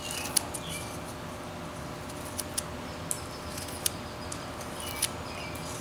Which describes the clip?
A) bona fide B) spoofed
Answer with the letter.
A